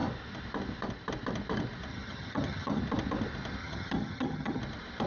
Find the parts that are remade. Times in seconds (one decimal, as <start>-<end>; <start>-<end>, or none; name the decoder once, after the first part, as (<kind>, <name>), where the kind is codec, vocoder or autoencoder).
1.9-2.8 (vocoder, HiFi-GAN); 3.6-4.6